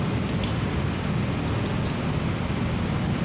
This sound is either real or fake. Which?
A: real